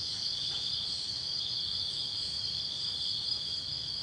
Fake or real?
fake